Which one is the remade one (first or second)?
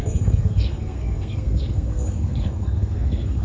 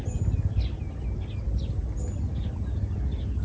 first